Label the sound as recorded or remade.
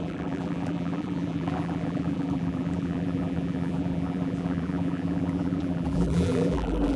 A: remade